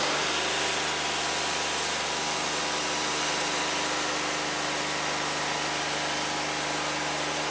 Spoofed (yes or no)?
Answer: no